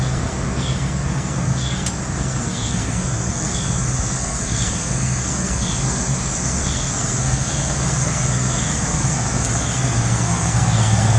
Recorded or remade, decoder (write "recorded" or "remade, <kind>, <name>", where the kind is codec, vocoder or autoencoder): remade, codec, SNAC